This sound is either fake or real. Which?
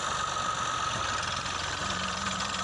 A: real